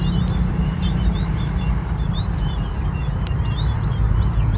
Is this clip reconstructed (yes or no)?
yes